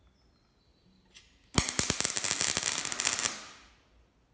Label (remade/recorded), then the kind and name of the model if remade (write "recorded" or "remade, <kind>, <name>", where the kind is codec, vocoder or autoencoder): recorded